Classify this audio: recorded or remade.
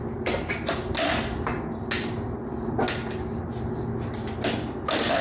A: recorded